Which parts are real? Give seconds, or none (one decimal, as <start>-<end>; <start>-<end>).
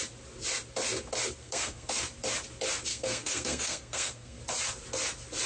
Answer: 0.0-1.4; 2.0-2.9; 4.4-5.5